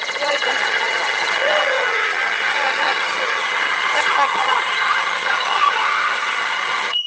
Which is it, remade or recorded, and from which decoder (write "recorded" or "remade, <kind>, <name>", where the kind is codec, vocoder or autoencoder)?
remade, vocoder, HiFi-GAN